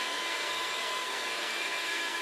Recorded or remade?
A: remade